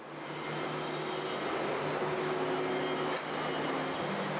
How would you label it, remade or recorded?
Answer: recorded